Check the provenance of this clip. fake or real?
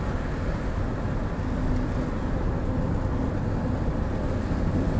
real